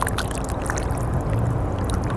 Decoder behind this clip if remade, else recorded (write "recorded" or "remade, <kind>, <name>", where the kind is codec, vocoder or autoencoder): recorded